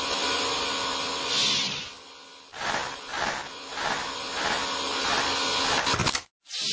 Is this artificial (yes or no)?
no